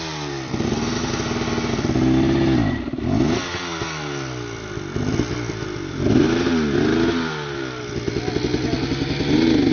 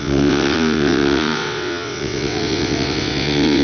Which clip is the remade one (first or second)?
second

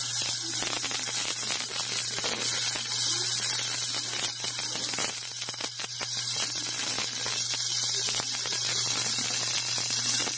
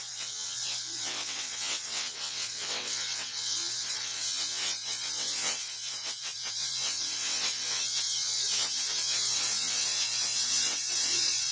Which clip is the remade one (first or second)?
second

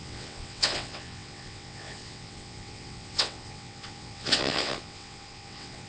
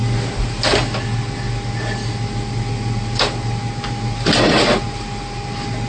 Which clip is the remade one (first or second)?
first